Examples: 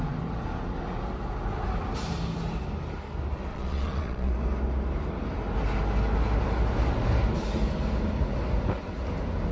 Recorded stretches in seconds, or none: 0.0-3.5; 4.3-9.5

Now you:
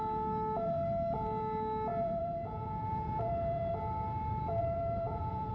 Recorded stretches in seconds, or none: 0.0-1.9; 3.7-4.6

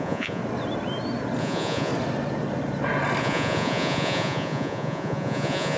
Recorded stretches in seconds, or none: 0.4-1.4; 1.9-3.2

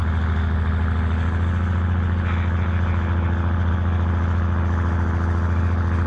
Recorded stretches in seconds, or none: 0.0-6.1

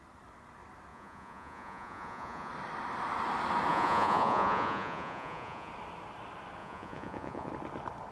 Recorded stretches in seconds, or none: 0.0-0.9; 2.5-3.7; 5.7-6.6; 7.5-8.1